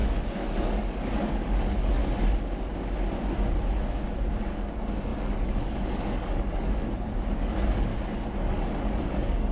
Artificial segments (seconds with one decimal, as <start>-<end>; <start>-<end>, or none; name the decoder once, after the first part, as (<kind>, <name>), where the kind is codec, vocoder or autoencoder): 0.0-2.0 (codec, DAC); 4.4-7.9; 8.4-9.5